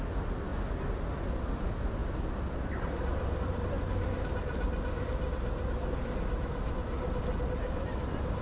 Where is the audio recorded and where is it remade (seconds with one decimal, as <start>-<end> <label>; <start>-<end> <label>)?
0.0-8.4 recorded